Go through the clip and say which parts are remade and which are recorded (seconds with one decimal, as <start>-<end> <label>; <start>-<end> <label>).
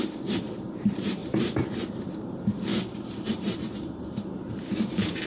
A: 0.0-5.3 remade